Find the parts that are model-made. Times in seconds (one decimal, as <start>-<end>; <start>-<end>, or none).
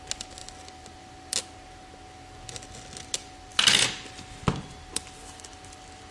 none